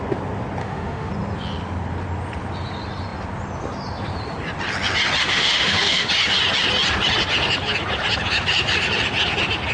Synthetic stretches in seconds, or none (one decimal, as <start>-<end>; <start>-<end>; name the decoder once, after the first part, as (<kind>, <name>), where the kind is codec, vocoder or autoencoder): 0.6-1.1 (autoencoder, DAC-VAE); 5.2-6.1